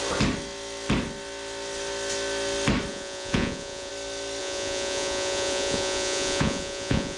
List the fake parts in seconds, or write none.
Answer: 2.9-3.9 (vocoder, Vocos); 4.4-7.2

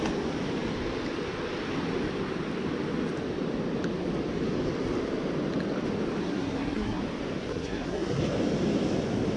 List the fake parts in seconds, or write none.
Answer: 6.2-7.0 (codec, SNAC); 7.5-8.2

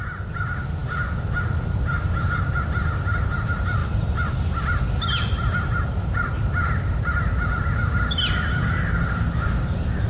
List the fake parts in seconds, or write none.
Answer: none

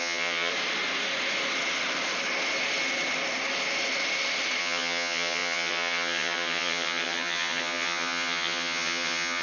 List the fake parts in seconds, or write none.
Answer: 0.0-0.5 (vocoder, HiFi-GAN); 4.6-9.4